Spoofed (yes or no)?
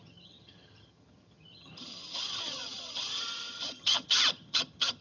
yes